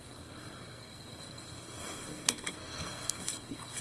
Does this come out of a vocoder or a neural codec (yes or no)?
yes